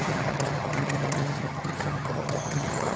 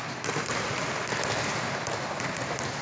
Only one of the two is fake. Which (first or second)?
first